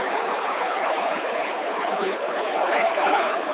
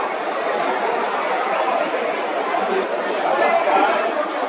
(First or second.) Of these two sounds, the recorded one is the second